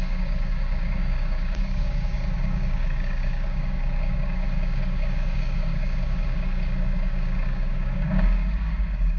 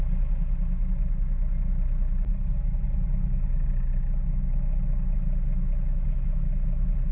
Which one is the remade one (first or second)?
first